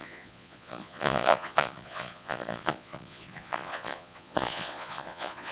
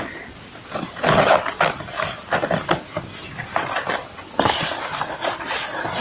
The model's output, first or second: first